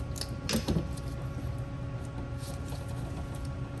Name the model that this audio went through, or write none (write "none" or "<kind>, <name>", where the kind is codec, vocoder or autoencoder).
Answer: none